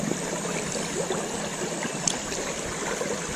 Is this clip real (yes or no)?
yes